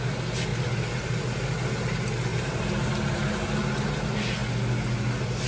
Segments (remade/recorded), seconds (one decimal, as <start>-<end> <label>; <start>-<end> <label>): 0.0-0.5 recorded; 0.5-1.3 remade; 1.3-2.3 recorded; 2.3-2.9 remade; 2.9-5.5 recorded